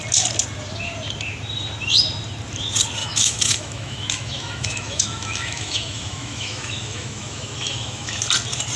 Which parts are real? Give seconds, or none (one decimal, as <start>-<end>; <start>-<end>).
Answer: 0.0-3.0; 8.2-8.8